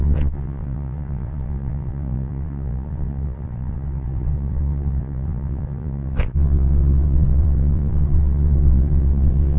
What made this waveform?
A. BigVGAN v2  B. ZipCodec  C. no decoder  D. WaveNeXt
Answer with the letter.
D